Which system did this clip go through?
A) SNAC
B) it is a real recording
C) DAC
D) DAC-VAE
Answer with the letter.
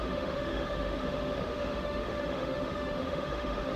D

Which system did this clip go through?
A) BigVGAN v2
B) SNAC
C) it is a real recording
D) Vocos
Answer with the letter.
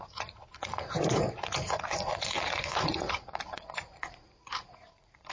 D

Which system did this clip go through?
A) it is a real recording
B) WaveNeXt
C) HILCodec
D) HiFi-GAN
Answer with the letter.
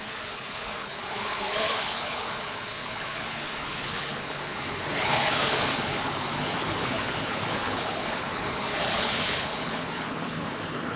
C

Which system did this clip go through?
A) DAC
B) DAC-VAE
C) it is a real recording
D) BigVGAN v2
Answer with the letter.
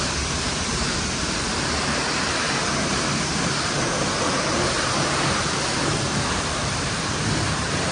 D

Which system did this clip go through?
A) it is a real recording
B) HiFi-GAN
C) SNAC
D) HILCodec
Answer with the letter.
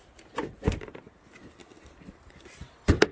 A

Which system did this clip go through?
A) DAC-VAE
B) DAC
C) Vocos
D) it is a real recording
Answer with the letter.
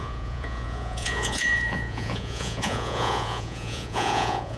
C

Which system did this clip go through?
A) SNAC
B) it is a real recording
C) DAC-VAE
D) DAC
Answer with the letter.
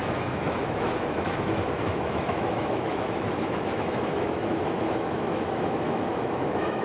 C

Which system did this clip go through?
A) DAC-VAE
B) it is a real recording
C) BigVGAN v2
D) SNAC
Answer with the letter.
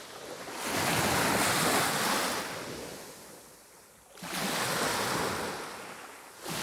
B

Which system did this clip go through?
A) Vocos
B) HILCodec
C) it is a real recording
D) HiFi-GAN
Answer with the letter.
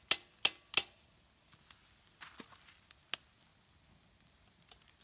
C